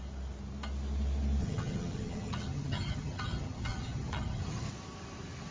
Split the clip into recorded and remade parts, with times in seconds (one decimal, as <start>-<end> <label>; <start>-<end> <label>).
0.0-1.4 recorded; 1.4-4.7 remade; 4.7-5.5 recorded